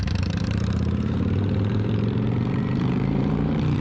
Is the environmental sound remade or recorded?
remade